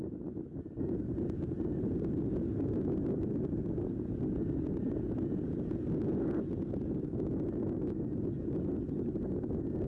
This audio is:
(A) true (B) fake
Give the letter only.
A